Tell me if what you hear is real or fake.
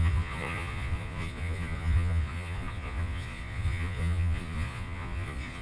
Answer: fake